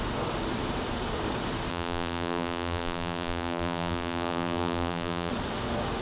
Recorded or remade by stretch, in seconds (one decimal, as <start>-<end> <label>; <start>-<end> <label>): 0.0-1.7 recorded; 1.7-5.3 remade; 5.3-6.0 recorded

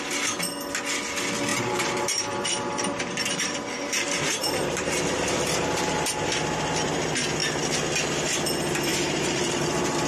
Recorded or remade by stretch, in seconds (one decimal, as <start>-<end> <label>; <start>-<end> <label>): 0.0-1.5 recorded; 1.5-5.0 remade; 5.0-8.9 recorded; 8.9-9.5 remade; 9.5-10.1 recorded